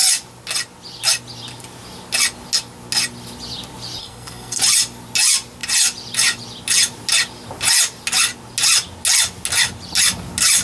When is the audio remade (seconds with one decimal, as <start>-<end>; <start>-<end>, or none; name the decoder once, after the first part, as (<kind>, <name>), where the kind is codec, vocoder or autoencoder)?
4.0-4.6 (codec, SNAC)